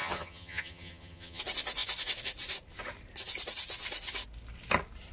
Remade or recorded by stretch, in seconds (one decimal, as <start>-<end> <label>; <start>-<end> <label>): 0.0-1.4 remade; 1.4-5.1 recorded